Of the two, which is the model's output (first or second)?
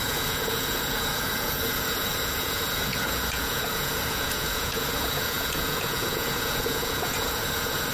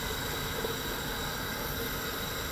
first